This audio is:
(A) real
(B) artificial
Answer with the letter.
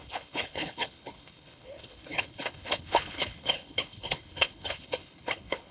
B